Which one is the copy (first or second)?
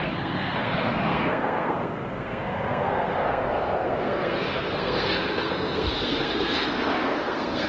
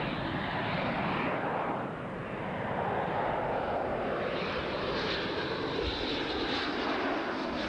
first